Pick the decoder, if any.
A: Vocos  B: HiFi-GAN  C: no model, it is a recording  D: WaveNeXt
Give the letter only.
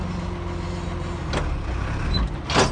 C